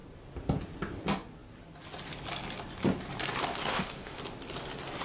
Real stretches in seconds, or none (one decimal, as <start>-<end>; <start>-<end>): 0.0-3.7; 4.2-5.0